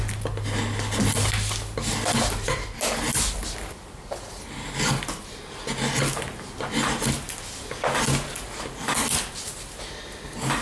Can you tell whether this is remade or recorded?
recorded